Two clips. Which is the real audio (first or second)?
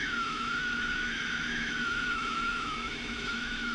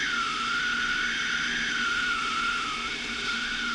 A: second